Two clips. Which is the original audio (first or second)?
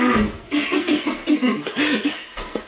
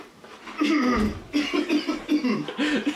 second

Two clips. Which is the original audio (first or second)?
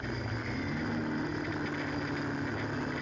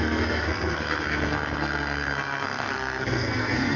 first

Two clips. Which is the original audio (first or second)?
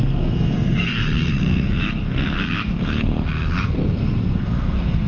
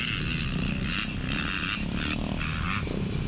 second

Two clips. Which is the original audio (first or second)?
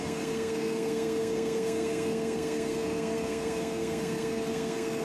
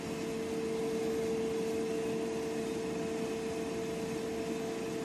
second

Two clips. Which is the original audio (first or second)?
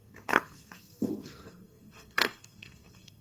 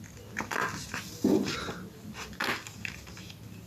second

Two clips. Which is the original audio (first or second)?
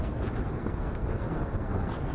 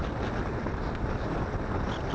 second